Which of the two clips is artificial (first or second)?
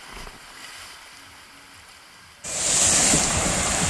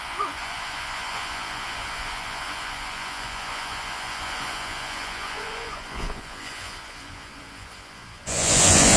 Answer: second